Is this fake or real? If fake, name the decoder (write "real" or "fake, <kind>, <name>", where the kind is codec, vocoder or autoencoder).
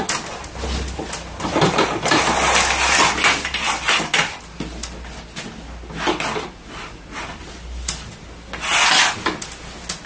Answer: real